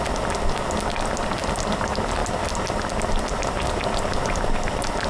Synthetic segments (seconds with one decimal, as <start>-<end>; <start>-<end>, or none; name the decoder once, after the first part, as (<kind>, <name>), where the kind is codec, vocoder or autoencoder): none